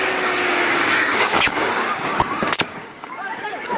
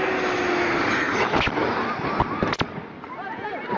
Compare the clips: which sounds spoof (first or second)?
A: first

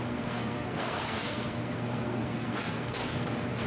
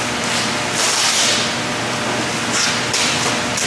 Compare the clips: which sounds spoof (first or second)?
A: first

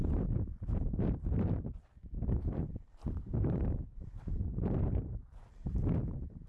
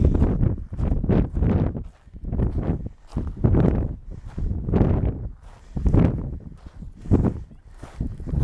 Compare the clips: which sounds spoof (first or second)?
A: first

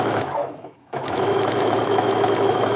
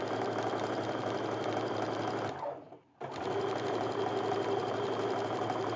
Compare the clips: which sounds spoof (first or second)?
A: first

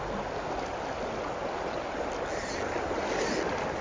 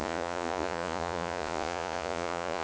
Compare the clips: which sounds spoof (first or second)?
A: second